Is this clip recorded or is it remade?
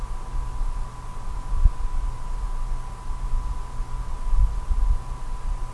recorded